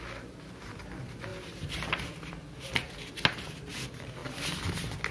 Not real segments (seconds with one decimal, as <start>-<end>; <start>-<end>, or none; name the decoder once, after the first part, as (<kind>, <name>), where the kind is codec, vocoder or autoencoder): none